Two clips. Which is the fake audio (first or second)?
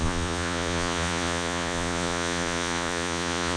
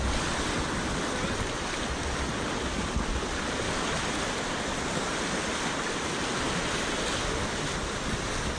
first